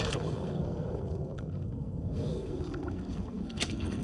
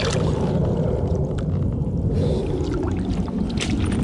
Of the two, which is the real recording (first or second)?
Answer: second